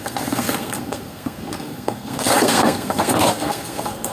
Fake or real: fake